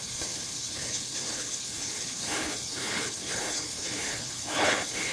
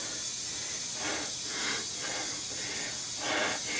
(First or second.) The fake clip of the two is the first